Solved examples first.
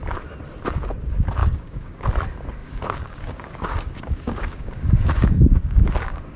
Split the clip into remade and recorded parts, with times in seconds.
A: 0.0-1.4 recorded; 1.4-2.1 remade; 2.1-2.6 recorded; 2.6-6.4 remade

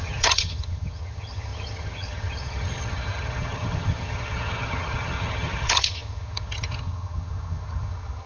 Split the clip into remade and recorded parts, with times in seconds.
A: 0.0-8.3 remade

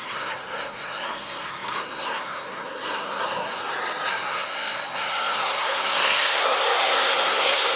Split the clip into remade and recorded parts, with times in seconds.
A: 0.0-3.6 remade; 3.6-4.1 recorded; 4.1-7.8 remade

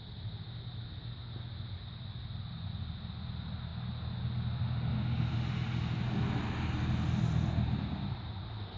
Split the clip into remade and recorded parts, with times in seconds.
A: 0.0-8.8 recorded